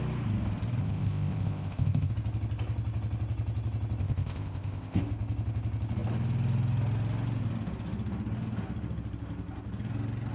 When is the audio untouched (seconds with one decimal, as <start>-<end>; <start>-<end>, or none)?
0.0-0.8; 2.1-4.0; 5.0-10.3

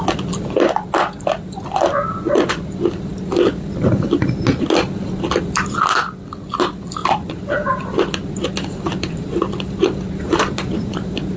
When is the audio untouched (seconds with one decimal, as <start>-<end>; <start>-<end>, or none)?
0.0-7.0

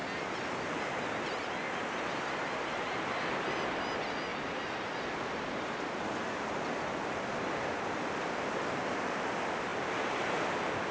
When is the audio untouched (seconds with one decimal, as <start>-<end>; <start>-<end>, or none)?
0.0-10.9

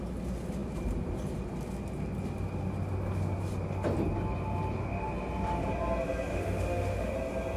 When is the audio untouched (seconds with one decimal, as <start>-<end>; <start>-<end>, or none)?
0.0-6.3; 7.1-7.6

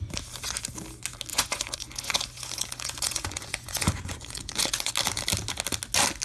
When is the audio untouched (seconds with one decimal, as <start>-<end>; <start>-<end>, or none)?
0.0-1.3; 4.9-6.2

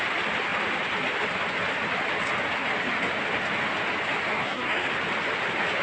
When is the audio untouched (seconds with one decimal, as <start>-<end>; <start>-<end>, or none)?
0.0-4.3; 4.9-5.8

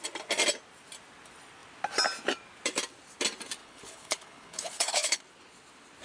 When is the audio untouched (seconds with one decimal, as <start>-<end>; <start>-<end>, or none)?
0.0-3.6; 5.2-6.0